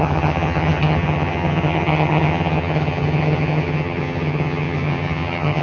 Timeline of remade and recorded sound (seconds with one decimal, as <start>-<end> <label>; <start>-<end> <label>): 0.0-5.6 remade